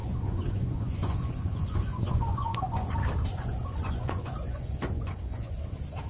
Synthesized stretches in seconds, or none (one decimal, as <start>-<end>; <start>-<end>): 0.0-2.9; 3.3-5.6